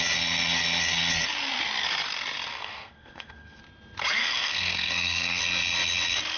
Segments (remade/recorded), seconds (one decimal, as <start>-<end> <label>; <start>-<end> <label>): 0.0-2.5 recorded; 2.5-3.6 remade; 3.6-4.2 recorded; 4.2-5.4 remade; 5.4-6.4 recorded